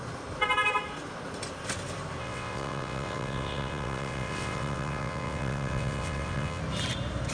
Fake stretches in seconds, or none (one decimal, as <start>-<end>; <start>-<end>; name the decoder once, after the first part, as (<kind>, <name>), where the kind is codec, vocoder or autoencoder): 2.2-6.6 (vocoder, WaveNeXt)